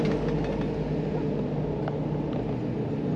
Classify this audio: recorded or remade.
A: recorded